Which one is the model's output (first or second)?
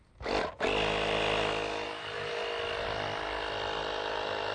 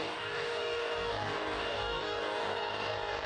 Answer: second